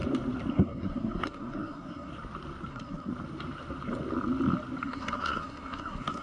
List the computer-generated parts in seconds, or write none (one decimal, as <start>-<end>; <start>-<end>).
0.5-2.1; 2.7-3.1; 4.8-6.2